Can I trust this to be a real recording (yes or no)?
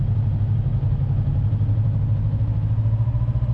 yes